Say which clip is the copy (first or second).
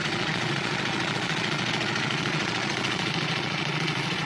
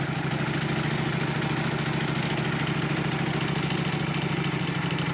first